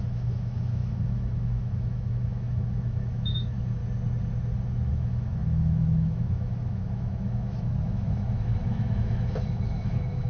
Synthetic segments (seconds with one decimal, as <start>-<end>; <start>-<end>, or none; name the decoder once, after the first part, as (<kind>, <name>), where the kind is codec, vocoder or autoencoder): 0.0-3.8 (autoencoder, DAC-VAE); 4.9-10.3